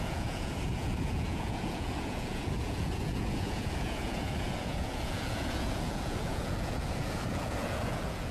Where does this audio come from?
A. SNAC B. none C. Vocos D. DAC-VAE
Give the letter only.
C